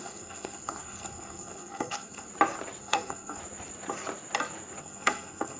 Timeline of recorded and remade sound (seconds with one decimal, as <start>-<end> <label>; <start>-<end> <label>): 0.0-2.3 remade; 2.3-2.8 recorded; 2.8-3.4 remade; 3.4-4.8 recorded; 4.8-5.6 remade